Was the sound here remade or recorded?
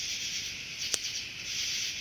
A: recorded